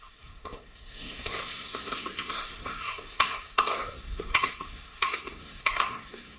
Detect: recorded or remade remade